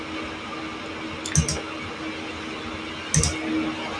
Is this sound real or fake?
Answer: real